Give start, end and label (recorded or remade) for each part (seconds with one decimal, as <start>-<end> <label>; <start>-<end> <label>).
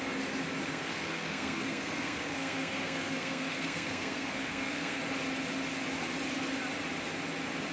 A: 0.0-0.7 recorded; 0.7-5.0 remade; 5.0-7.7 recorded